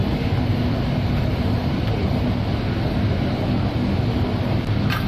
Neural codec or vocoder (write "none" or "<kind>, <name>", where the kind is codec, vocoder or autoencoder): none